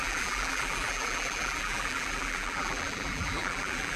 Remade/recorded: remade